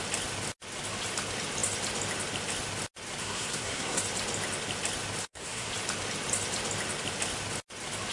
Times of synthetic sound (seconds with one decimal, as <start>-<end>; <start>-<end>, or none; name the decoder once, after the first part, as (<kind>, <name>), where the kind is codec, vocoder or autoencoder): 3.2-4.0 (codec, SNAC); 5.2-5.7